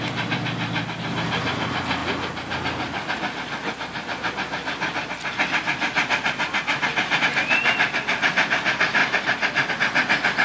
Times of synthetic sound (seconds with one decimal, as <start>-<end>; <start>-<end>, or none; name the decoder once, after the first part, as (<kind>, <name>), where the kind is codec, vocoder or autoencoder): none